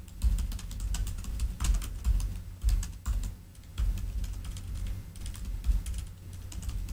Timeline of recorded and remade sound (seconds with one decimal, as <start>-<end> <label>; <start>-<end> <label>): 0.0-1.0 recorded; 1.0-1.6 remade; 1.6-6.9 recorded